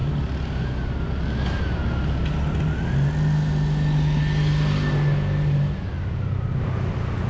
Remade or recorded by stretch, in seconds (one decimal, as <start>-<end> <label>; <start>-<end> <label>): 0.0-7.3 recorded